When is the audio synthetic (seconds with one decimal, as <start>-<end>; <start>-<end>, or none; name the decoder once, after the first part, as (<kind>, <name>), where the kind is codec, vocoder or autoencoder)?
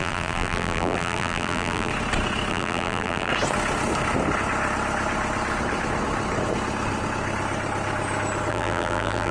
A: 0.0-1.9 (vocoder, BigVGAN v2); 2.5-3.3; 8.5-9.3